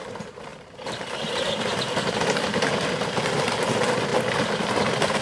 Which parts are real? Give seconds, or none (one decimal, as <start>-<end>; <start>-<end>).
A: 0.0-0.5; 2.7-5.2